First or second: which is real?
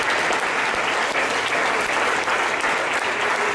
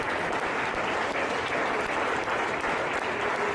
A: first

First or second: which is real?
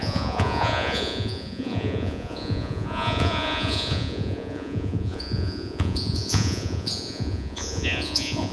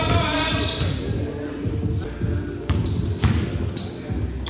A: second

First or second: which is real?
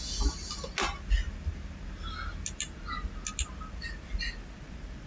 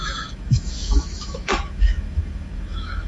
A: first